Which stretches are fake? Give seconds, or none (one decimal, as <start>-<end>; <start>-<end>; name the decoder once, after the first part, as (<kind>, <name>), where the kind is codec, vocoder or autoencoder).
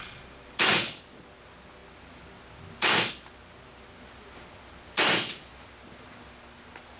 none